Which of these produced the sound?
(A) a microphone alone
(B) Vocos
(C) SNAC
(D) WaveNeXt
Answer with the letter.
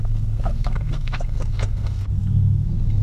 C